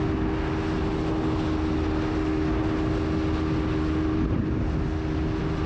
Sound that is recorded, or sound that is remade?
recorded